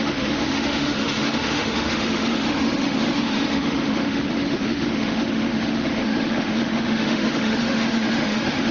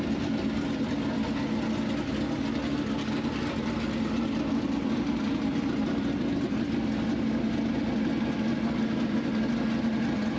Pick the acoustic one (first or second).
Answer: second